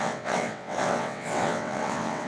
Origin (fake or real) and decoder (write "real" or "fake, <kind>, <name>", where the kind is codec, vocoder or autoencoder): fake, vocoder, WaveNeXt